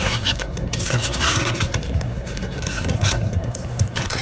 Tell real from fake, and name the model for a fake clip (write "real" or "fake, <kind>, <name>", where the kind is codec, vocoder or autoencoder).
fake, codec, SNAC